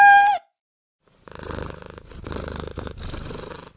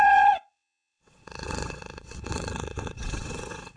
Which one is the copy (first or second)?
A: second